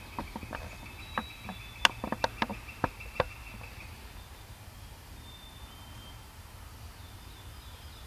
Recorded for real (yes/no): yes